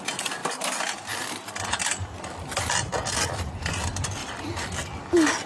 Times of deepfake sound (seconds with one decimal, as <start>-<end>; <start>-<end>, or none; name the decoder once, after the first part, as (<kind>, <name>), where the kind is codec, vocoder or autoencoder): 4.2-5.0 (vocoder, BigVGAN v2)